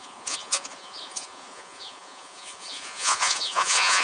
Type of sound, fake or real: fake